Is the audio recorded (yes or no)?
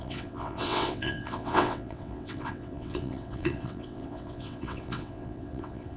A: no